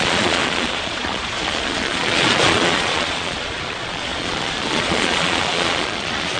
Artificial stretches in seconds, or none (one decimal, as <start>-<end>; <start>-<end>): 0.0-6.4